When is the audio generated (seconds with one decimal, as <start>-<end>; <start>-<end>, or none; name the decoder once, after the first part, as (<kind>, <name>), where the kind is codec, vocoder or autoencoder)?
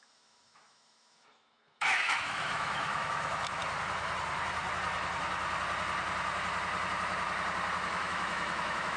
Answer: 0.0-3.6 (autoencoder, DAC-VAE); 7.9-9.0